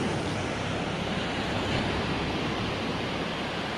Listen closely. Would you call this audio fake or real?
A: real